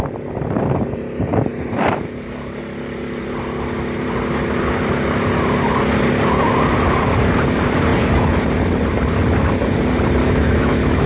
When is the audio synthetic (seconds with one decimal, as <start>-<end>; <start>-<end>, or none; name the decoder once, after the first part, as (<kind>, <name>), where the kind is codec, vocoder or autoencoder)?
10.2-11.1 (autoencoder, DAC-VAE)